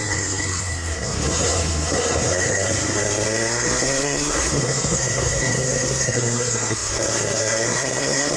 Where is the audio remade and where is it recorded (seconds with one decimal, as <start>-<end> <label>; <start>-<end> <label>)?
0.0-8.4 remade